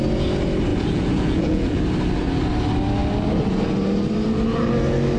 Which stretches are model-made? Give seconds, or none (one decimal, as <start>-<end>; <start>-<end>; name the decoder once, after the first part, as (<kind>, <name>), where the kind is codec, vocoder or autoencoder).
0.7-1.8 (vocoder, Vocos)